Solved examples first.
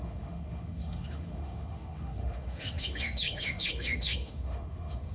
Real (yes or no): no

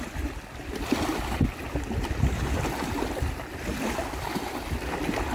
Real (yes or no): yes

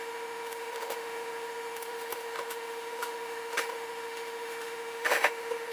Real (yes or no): no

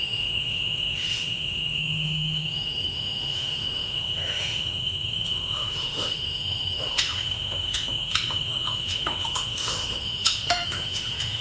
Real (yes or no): no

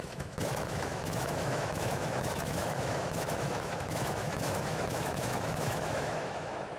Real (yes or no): no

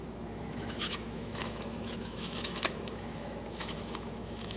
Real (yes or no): no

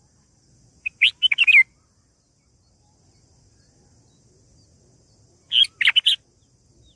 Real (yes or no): yes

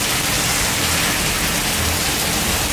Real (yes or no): yes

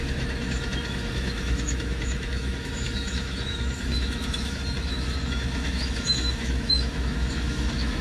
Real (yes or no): no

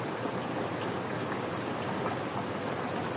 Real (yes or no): yes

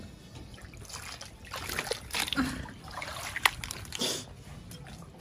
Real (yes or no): yes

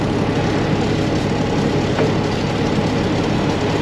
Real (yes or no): yes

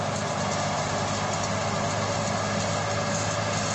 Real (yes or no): yes